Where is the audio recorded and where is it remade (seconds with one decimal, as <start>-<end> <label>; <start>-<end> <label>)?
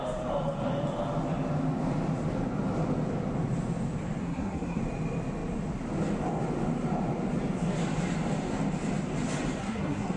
0.0-4.2 recorded; 4.2-4.8 remade; 4.8-9.6 recorded; 9.6-10.2 remade